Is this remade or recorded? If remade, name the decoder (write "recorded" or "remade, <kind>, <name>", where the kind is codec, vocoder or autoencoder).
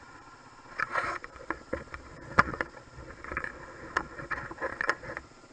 remade, vocoder, Vocos